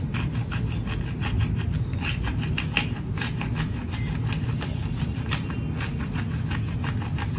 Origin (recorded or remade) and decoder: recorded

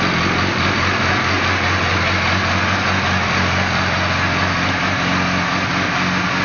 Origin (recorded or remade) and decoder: recorded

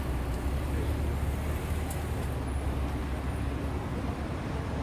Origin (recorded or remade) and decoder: recorded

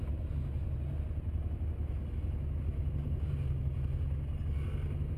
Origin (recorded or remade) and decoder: recorded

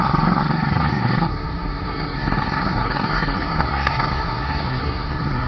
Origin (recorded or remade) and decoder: remade, codec, SNAC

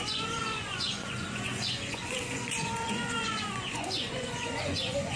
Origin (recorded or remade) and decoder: remade, vocoder, Vocos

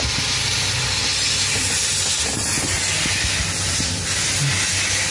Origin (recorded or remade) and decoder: recorded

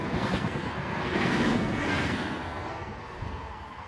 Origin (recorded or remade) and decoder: remade, codec, SNAC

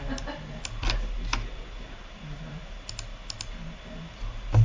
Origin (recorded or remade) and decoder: recorded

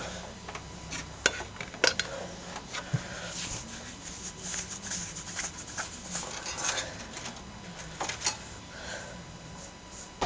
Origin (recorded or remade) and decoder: recorded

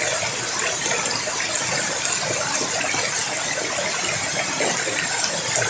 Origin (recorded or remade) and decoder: recorded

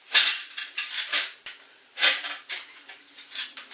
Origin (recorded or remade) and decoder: remade, vocoder, BigVGAN v2